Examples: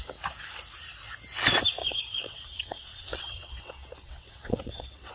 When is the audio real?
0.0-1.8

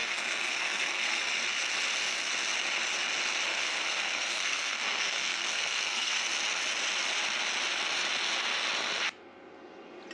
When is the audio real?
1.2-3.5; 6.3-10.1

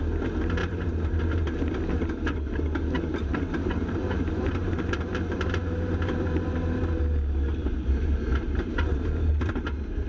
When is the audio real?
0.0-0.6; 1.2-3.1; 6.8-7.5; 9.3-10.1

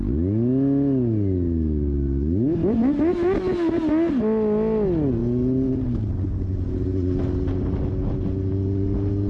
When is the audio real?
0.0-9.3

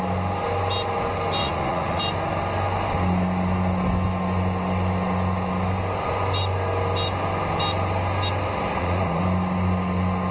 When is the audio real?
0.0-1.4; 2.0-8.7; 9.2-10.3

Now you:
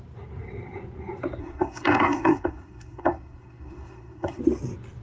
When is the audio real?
0.0-1.4; 4.4-5.0